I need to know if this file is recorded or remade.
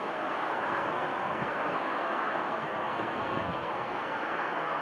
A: remade